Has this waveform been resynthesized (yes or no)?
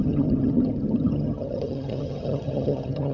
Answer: yes